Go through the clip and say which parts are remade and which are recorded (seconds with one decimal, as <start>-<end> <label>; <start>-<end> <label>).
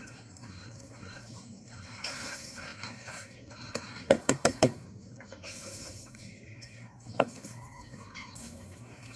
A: 0.0-9.2 remade